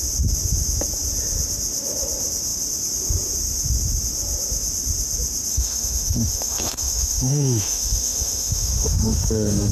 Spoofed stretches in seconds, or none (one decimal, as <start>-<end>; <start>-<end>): 5.5-9.7